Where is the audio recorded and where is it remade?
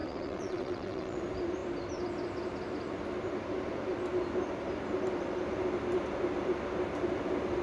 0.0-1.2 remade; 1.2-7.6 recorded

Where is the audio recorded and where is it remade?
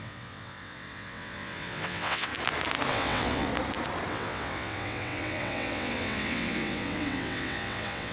0.0-2.3 remade; 2.3-2.9 recorded; 2.9-3.5 remade; 3.5-4.1 recorded; 4.1-8.1 remade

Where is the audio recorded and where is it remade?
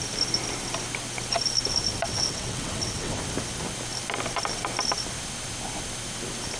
0.0-2.1 recorded; 2.1-3.2 remade; 3.2-6.6 recorded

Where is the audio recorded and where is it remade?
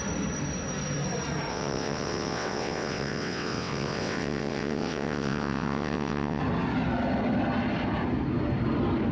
0.0-1.5 recorded; 1.5-6.4 remade; 6.4-9.1 recorded